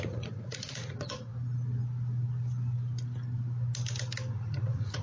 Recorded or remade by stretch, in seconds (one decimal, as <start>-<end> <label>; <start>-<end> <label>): 0.0-1.3 remade; 1.3-4.3 recorded; 4.3-5.0 remade